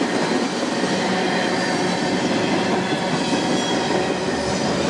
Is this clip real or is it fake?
real